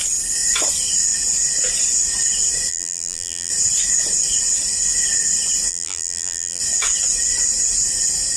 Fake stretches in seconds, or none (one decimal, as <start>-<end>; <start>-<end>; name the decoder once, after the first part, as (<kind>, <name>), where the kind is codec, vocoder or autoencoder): 2.7-3.5 (vocoder, BigVGAN v2); 5.7-6.6

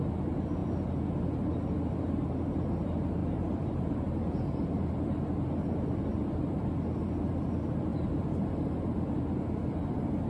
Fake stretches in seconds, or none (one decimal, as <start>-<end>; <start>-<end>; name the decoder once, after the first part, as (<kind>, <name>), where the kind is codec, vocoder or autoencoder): 3.2-5.3 (vocoder, BigVGAN v2); 6.1-6.7; 7.9-8.8

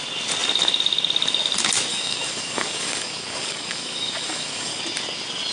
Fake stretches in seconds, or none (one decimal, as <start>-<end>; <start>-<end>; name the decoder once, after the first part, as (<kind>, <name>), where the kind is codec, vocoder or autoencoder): 1.9-4.8 (codec, DAC)

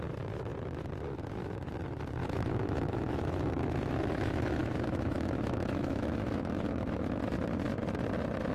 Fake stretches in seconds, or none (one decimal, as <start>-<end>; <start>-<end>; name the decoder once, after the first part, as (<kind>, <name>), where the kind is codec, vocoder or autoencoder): 2.2-7.2 (autoencoder, DAC-VAE)